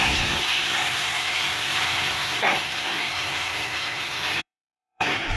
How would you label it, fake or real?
fake